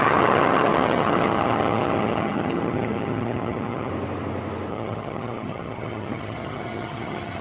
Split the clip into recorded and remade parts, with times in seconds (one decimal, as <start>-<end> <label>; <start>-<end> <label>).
0.0-3.9 remade; 3.9-4.7 recorded; 4.7-7.4 remade